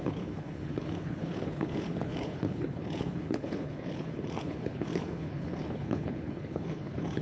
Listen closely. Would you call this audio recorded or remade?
remade